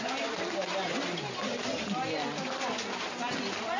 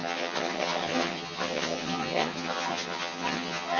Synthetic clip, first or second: second